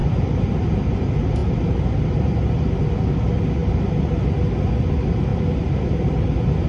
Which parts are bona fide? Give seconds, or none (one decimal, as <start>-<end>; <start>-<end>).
0.5-3.6; 4.3-6.7